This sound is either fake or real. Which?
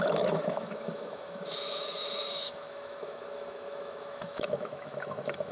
fake